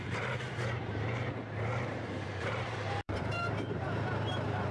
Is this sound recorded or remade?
remade